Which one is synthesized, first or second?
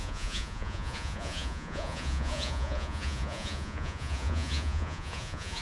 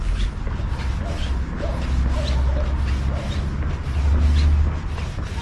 first